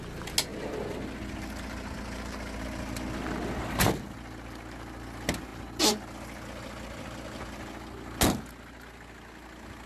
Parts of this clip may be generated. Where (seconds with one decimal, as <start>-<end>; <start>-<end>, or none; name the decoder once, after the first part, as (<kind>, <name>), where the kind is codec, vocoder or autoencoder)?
none